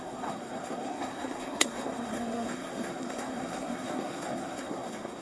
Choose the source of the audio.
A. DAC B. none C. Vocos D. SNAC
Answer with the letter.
D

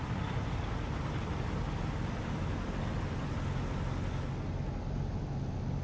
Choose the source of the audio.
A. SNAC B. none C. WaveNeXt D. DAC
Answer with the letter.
B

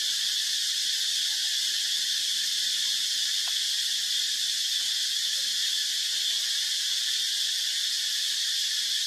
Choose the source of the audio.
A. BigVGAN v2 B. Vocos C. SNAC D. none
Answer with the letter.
D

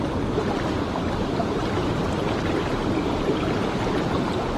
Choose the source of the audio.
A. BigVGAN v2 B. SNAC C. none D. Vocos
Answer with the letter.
C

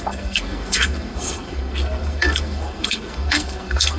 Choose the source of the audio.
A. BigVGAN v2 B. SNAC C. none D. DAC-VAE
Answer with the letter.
B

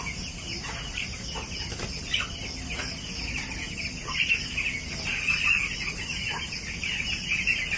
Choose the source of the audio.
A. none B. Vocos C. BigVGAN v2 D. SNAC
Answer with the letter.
A